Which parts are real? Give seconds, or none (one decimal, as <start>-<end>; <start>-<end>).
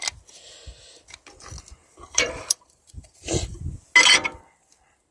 0.0-1.8; 3.6-5.1